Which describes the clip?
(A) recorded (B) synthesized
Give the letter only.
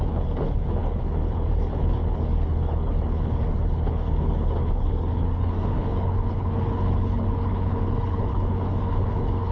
B